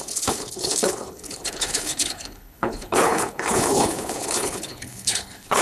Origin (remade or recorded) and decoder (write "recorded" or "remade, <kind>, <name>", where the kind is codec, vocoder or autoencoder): remade, codec, HILCodec